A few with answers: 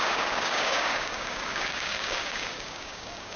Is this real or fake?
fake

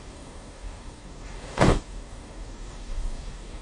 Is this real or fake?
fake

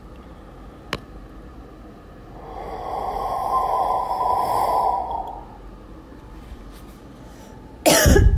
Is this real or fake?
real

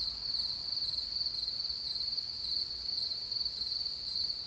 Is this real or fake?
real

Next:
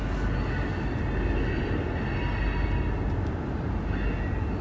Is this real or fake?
real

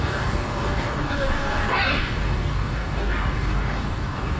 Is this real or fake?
fake